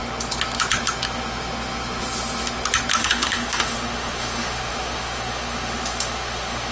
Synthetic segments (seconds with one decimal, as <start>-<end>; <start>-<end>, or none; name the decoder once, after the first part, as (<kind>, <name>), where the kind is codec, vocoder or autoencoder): 3.0-6.7 (autoencoder, DAC-VAE)